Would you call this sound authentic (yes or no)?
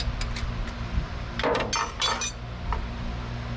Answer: yes